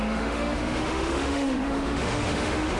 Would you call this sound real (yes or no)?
no